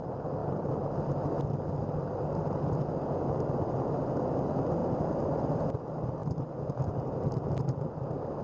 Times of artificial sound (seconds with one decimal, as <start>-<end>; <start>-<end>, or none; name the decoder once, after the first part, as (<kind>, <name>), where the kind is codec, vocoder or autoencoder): 0.4-2.9 (vocoder, BigVGAN v2); 6.2-7.6